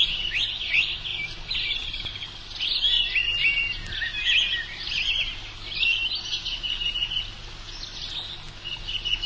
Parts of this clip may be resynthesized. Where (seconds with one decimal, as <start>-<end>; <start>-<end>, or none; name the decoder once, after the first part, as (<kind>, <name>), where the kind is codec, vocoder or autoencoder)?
none